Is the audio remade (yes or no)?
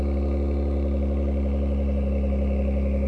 no